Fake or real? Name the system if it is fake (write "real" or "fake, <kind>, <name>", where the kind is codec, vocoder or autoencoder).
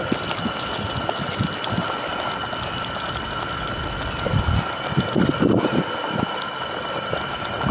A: real